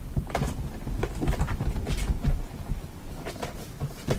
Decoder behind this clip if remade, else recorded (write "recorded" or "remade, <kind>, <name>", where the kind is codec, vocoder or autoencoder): recorded